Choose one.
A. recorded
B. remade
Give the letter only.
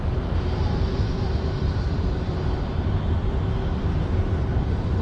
A